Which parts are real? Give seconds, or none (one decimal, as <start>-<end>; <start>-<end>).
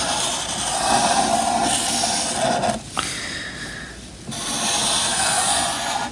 0.0-5.1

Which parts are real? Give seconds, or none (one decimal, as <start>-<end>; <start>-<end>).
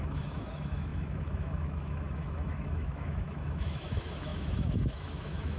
none